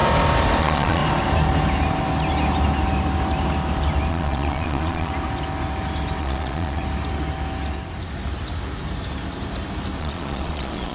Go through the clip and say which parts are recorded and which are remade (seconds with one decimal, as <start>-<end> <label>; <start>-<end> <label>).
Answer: 0.0-0.6 recorded; 0.6-1.0 remade; 1.0-4.1 recorded; 4.1-5.1 remade; 5.1-6.2 recorded; 6.2-6.8 remade; 6.8-10.0 recorded; 10.0-10.9 remade